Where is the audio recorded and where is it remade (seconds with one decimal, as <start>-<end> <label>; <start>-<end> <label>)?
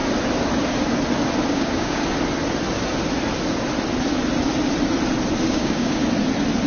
0.0-1.5 recorded; 1.5-2.0 remade; 2.0-5.5 recorded; 5.5-6.0 remade; 6.0-6.7 recorded